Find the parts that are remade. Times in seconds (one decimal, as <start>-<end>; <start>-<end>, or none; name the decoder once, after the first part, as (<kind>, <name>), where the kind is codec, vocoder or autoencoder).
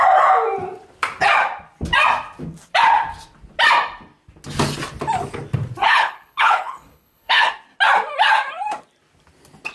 5.8-7.5 (codec, HILCodec)